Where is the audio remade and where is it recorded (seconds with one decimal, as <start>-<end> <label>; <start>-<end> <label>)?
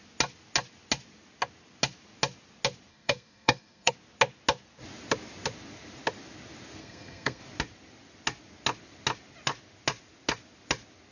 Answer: 0.0-2.9 recorded; 2.9-3.9 remade; 3.9-6.8 recorded; 6.8-7.4 remade; 7.4-11.1 recorded